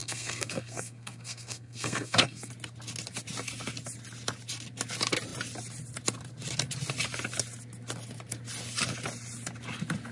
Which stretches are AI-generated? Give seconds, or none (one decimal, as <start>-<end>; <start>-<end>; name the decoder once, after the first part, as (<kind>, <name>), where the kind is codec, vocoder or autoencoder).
0.0-2.5 (codec, SNAC)